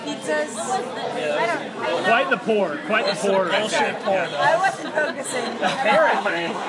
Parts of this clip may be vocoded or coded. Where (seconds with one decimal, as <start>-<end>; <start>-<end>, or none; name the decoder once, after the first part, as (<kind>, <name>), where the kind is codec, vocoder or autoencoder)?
6.1-6.7 (codec, SNAC)